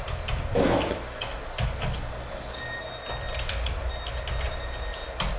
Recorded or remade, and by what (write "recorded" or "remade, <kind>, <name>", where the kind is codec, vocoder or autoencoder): recorded